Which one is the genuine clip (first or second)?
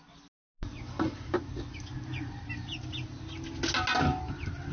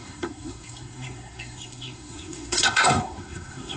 first